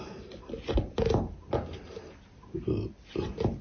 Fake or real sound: real